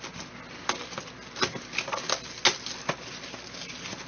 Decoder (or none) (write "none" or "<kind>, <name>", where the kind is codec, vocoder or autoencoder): none